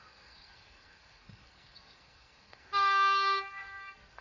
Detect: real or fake fake